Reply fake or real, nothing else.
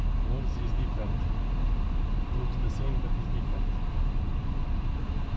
real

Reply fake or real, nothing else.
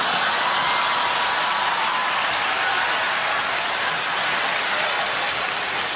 real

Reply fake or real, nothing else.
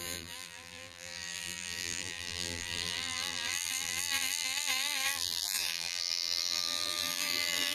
fake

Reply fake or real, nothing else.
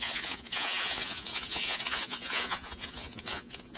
fake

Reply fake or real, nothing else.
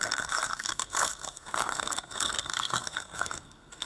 fake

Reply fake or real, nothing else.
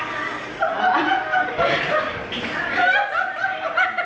fake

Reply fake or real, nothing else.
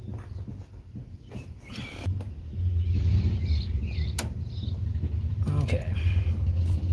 real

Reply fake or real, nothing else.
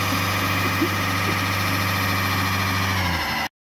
real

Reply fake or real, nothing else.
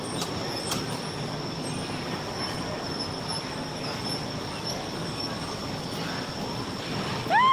real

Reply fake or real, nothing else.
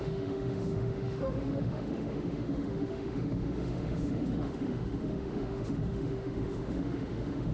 fake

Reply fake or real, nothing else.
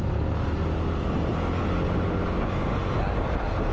real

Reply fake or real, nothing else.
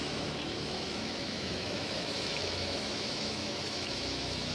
fake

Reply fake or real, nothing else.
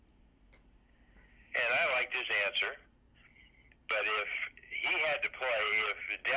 real